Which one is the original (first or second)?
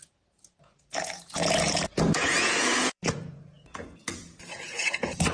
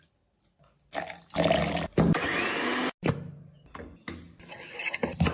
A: second